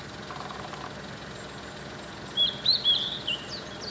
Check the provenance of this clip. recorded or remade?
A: recorded